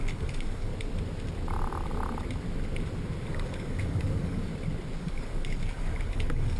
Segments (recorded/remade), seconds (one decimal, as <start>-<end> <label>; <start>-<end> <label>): 0.0-0.7 remade; 0.7-3.3 recorded; 3.3-4.5 remade; 4.5-5.0 recorded; 5.0-6.6 remade